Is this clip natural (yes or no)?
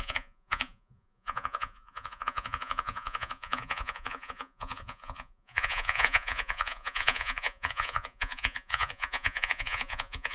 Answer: no